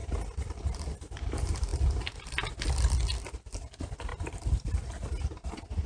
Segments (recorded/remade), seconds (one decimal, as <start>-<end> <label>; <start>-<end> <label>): 0.0-5.9 recorded